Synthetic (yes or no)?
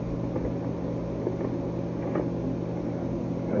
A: no